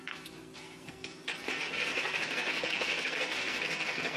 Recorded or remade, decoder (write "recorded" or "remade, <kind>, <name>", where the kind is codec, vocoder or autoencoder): remade, codec, SNAC